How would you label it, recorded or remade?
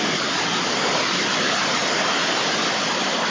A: recorded